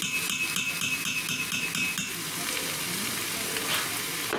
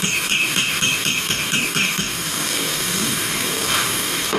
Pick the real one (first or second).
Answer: first